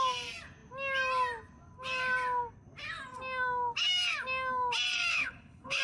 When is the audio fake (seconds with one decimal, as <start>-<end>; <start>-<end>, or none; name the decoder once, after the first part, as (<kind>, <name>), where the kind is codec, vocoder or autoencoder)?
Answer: 5.1-5.8 (codec, HILCodec)